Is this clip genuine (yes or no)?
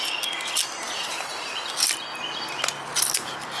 yes